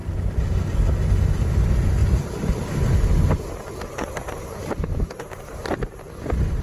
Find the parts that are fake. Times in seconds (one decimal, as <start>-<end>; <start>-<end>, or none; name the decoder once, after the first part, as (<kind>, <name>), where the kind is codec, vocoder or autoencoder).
0.0-0.8 (vocoder, BigVGAN v2); 2.0-5.7